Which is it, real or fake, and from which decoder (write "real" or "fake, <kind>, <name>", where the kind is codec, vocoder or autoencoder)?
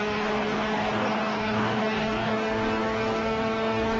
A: fake, codec, DAC